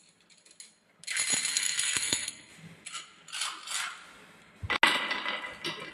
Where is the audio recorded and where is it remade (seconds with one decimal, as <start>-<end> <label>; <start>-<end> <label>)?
0.0-1.5 recorded; 1.5-2.5 remade; 2.5-5.9 recorded